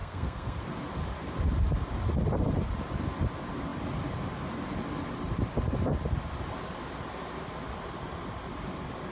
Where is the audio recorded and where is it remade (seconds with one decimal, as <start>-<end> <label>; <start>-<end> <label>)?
0.0-0.6 remade; 0.6-9.1 recorded